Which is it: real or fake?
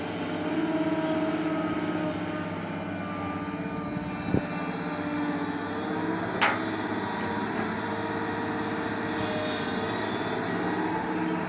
real